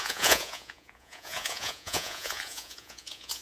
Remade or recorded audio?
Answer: remade